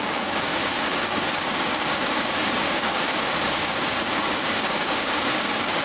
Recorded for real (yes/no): no